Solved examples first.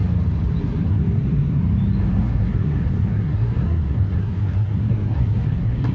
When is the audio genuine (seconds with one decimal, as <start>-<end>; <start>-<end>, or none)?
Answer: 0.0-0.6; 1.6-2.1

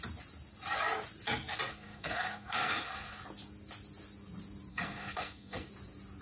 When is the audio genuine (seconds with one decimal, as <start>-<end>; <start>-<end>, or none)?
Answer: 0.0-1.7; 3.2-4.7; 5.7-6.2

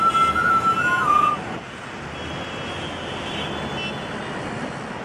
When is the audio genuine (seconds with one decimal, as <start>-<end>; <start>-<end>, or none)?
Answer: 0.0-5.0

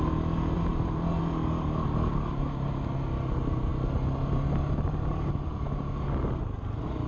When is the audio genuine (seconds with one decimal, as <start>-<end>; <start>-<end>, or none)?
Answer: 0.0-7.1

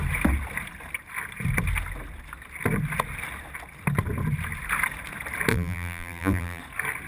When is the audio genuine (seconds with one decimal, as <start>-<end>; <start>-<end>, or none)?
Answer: 0.0-5.5; 6.6-7.1

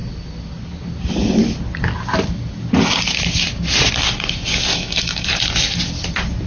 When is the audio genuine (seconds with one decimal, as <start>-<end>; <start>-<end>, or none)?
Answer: 0.0-4.7; 5.3-6.5

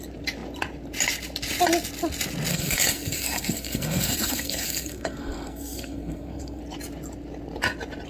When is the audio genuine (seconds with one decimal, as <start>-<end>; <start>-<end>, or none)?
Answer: 0.0-2.5; 6.6-8.1